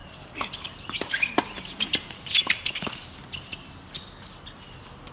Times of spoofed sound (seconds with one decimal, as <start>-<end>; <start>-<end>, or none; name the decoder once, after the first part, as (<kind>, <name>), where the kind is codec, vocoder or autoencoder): none